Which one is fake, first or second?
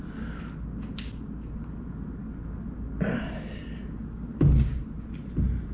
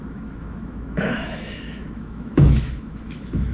second